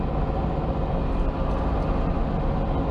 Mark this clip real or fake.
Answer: real